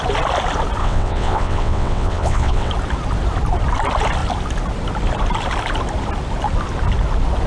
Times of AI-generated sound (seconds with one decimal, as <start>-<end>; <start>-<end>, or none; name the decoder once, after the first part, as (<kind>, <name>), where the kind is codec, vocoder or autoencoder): 0.8-2.7 (vocoder, WaveNeXt)